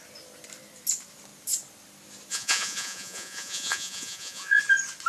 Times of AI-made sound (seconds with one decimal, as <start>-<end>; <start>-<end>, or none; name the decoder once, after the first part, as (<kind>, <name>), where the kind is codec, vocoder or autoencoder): 2.3-4.6 (vocoder, Vocos)

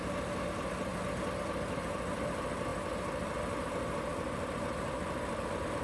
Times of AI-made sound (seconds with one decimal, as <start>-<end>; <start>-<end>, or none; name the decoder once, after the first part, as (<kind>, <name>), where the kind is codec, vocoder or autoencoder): none

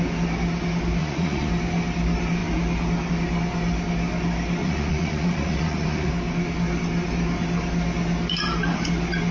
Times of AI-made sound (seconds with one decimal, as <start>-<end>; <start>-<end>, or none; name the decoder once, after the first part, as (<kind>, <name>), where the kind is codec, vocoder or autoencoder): 1.0-1.5 (vocoder, Vocos); 4.6-6.1

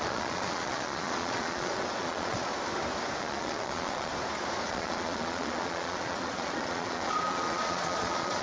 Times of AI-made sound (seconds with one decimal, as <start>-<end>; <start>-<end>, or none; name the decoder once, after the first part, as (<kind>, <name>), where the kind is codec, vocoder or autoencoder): 0.0-2.5 (vocoder, Vocos); 3.2-4.1; 4.7-8.4

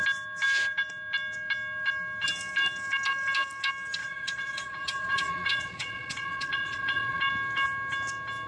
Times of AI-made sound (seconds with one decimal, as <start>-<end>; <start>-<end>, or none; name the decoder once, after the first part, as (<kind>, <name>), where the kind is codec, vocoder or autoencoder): 4.0-7.2 (vocoder, Vocos)

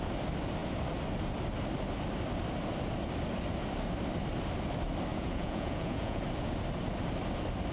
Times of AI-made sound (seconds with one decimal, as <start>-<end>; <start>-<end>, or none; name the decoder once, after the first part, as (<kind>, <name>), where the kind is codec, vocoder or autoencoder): 5.1-6.2 (vocoder, Vocos)

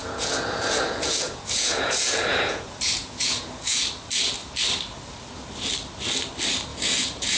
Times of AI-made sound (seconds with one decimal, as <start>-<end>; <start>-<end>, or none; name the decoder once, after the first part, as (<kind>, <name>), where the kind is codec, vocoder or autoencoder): 0.0-3.8 (vocoder, Vocos); 6.7-7.4